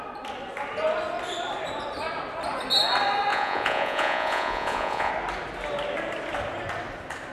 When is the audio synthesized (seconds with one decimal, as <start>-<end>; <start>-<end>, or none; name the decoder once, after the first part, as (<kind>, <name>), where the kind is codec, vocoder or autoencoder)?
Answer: 3.3-5.1 (vocoder, Vocos)